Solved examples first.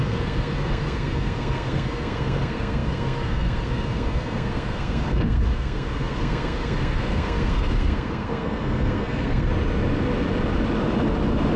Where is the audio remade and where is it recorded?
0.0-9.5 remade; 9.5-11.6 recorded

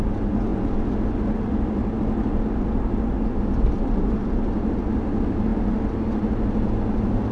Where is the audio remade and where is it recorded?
0.0-7.3 recorded

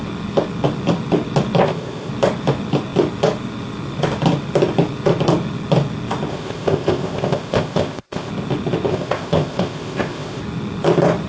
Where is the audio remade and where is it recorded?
0.0-1.6 recorded; 1.6-2.1 remade; 2.1-6.3 recorded; 6.3-8.3 remade; 8.3-8.9 recorded; 8.9-10.4 remade; 10.4-11.3 recorded

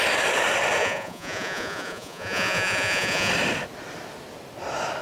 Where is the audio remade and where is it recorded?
0.0-0.8 recorded; 0.8-3.3 remade; 3.3-5.0 recorded

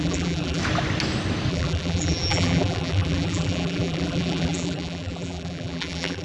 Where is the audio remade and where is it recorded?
0.0-0.6 remade; 0.6-1.5 recorded; 1.5-6.2 remade